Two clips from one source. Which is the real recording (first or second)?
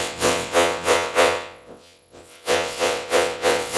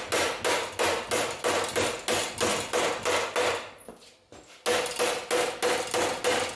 second